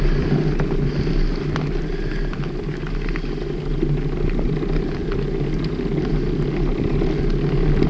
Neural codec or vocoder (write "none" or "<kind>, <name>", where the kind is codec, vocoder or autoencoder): none